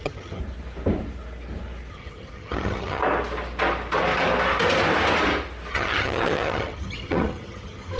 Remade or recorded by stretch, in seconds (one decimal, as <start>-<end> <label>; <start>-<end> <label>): 0.0-0.4 remade; 0.4-1.9 recorded; 1.9-3.0 remade; 3.0-5.7 recorded; 5.7-8.0 remade